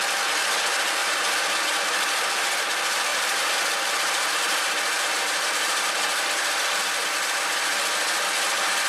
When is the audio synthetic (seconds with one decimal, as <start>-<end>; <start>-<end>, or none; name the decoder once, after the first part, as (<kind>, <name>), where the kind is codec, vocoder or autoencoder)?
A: 3.1-5.9 (vocoder, BigVGAN v2)